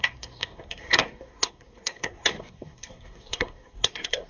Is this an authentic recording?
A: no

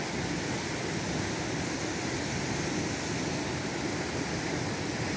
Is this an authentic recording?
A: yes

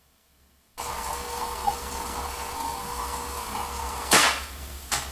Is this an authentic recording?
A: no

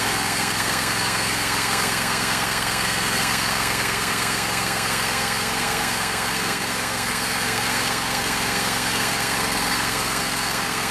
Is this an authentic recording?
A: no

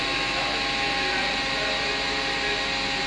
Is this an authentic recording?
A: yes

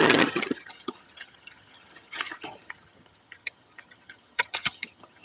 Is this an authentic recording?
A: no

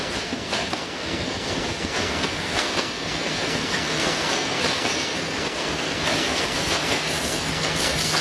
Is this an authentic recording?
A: no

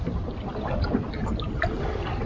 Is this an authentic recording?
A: yes